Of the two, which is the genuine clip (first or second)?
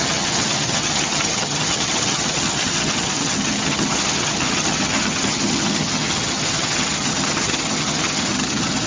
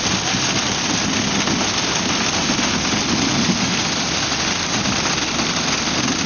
second